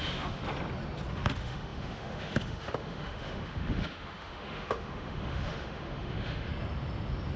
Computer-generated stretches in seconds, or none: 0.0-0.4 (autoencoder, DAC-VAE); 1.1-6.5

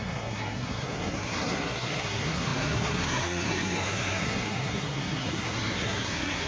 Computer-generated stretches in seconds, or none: 0.0-6.5 (codec, SNAC)

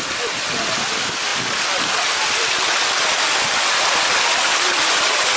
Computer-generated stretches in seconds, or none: none

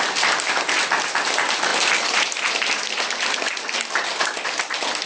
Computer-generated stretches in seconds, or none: none

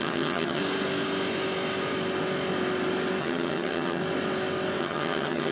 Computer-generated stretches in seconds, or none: 0.0-0.6 (vocoder, HiFi-GAN); 3.2-4.0; 4.8-5.5